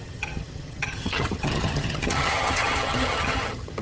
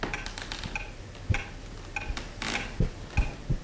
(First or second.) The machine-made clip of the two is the first